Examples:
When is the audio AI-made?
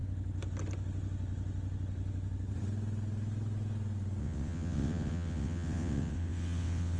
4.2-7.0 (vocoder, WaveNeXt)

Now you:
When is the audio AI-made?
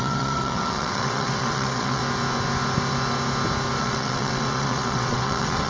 0.0-2.0 (vocoder, WaveNeXt); 3.8-5.7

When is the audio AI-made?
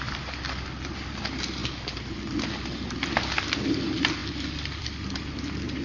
none